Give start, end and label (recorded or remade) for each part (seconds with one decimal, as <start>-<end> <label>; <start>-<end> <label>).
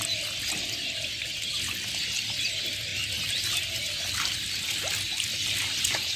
0.0-6.2 recorded